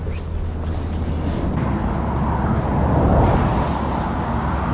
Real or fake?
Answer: real